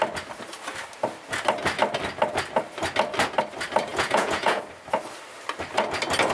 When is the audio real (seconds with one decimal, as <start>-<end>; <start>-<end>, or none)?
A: 0.0-3.9; 4.6-6.3